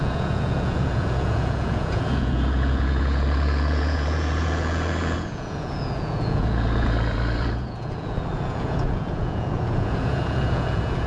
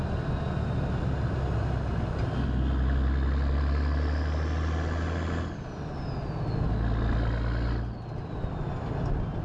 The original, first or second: second